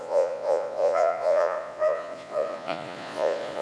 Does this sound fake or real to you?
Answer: fake